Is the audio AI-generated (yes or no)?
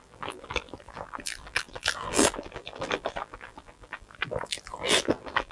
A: yes